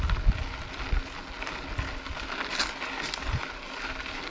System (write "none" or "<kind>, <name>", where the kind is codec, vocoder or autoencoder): none